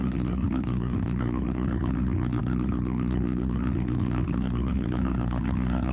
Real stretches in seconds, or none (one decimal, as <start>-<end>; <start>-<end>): none